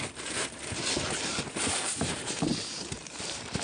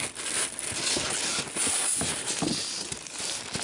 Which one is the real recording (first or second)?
second